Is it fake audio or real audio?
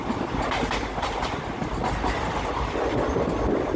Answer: real